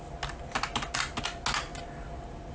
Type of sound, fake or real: real